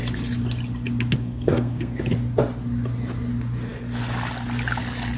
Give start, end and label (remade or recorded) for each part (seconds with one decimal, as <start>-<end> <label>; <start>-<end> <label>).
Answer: 0.0-1.2 recorded; 1.2-2.0 remade; 2.0-5.2 recorded